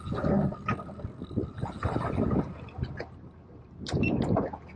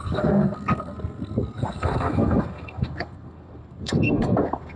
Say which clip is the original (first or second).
first